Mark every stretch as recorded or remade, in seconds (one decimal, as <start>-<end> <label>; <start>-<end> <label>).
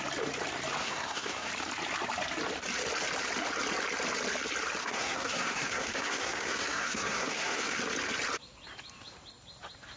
0.0-0.8 recorded; 0.8-1.5 remade; 1.5-4.8 recorded; 4.8-7.8 remade; 7.8-10.0 recorded